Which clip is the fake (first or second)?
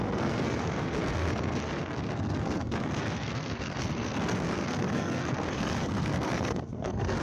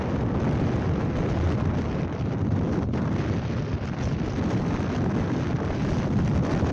first